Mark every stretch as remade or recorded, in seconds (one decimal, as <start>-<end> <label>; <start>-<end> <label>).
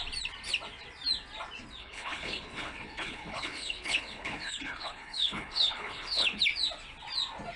0.0-1.8 recorded; 1.8-6.4 remade; 6.4-7.6 recorded